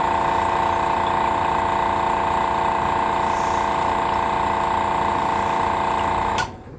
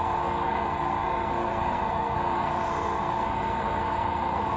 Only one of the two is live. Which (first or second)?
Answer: first